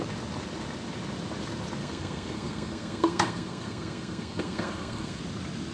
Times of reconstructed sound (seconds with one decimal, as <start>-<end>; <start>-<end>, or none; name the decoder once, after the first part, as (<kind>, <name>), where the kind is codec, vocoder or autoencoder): 1.8-5.2 (codec, SNAC)